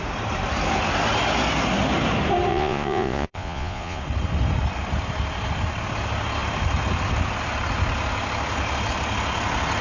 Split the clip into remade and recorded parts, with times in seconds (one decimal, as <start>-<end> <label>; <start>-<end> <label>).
0.0-2.5 recorded; 2.5-4.0 remade; 4.0-9.8 recorded